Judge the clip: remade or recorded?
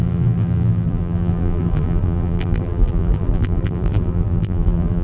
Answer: remade